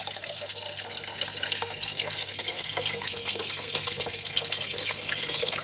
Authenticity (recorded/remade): remade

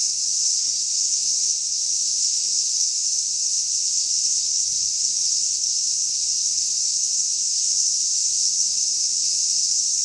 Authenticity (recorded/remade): remade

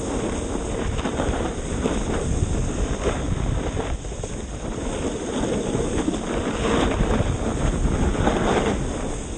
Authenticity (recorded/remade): recorded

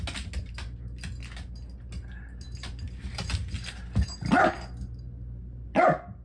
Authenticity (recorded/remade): recorded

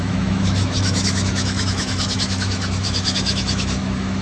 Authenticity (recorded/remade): remade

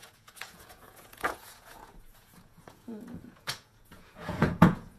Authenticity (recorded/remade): remade